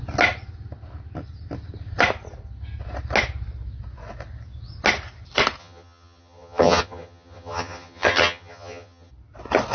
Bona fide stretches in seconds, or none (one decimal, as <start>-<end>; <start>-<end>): 0.0-5.6; 9.1-9.7